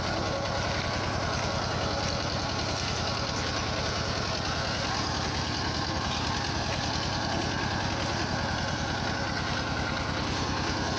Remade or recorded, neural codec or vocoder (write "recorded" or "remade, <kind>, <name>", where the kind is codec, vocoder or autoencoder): recorded